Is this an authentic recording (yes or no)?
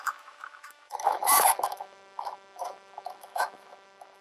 no